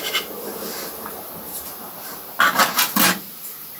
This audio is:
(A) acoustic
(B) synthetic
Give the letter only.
A